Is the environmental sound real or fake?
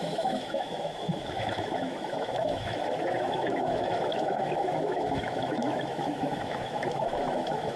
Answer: fake